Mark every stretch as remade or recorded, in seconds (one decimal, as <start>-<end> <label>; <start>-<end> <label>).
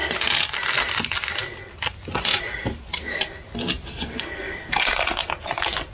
0.0-3.9 recorded; 3.9-4.7 remade; 4.7-5.9 recorded